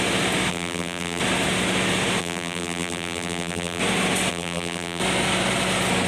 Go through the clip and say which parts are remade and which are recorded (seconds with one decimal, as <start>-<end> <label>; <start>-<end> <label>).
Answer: 0.0-0.5 recorded; 0.5-1.2 remade; 1.2-2.2 recorded; 2.2-3.8 remade; 3.8-4.3 recorded; 4.3-5.0 remade; 5.0-6.1 recorded